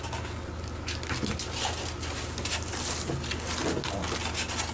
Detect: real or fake real